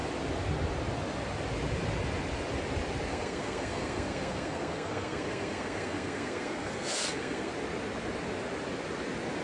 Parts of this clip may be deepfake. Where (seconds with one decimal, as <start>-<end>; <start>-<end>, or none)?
3.1-7.5